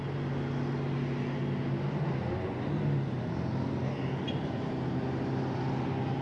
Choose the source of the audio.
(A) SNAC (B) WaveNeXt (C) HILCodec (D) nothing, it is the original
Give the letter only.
D